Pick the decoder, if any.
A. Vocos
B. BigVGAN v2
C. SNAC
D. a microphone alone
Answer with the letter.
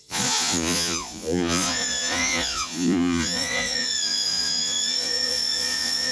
A